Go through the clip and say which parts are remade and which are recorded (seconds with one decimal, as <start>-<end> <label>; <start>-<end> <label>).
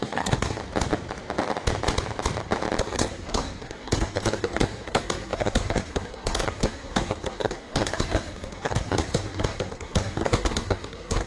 0.0-0.6 remade; 0.6-2.8 recorded; 2.8-11.3 remade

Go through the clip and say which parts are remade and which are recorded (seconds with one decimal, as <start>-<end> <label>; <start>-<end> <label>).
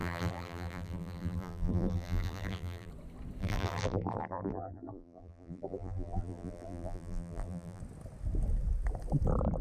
0.0-2.9 remade; 2.9-3.4 recorded; 3.4-7.8 remade; 7.8-9.6 recorded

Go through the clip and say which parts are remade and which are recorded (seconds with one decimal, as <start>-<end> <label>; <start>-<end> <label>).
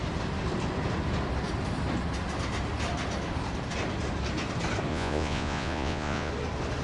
0.0-4.9 recorded; 4.9-6.3 remade; 6.3-6.8 recorded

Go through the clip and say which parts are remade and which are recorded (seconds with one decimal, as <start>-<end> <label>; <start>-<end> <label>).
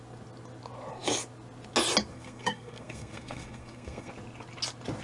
0.0-2.1 recorded; 2.1-4.1 remade; 4.1-5.0 recorded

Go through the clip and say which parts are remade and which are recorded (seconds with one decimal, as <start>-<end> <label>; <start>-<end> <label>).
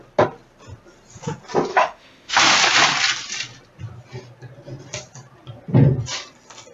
0.0-1.7 recorded; 1.7-2.4 remade; 2.4-6.7 recorded